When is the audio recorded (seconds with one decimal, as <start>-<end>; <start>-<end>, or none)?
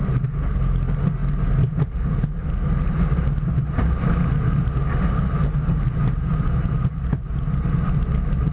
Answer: 0.0-8.5